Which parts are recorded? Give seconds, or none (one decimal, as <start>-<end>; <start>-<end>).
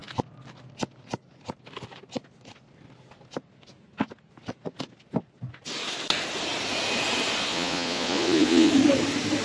0.0-7.5; 8.7-9.4